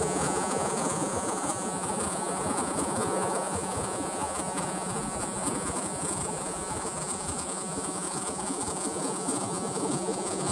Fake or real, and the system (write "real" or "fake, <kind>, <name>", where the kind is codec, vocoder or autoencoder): fake, vocoder, Vocos